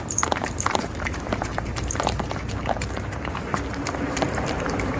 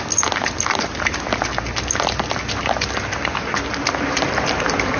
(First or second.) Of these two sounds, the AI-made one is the first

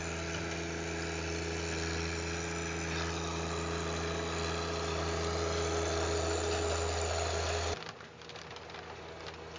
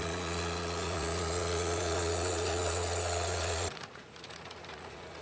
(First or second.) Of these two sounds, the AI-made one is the second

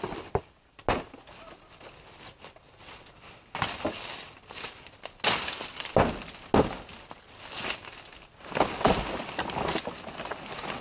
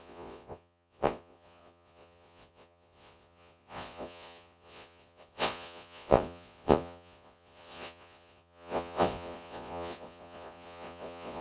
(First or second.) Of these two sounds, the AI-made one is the second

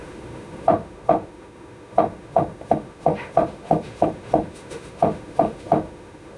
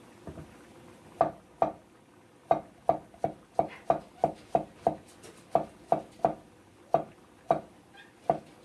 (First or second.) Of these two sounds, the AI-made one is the first